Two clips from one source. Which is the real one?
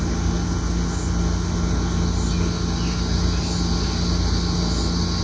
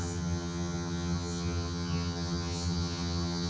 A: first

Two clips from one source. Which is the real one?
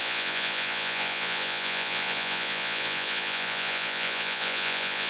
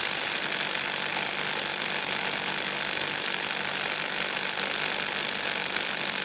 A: second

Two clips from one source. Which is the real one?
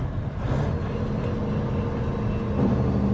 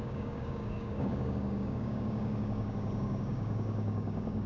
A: first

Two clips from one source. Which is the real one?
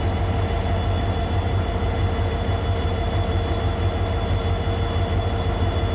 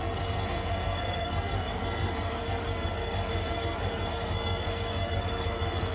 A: first